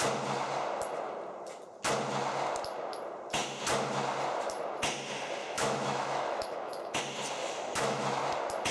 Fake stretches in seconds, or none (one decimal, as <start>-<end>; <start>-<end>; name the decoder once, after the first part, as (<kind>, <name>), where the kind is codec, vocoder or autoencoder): 5.4-7.0 (autoencoder, DAC-VAE); 7.4-8.2